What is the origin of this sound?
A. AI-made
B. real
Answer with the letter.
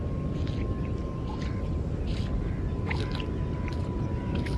B